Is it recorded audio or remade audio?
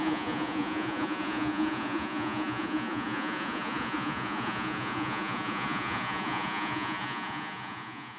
remade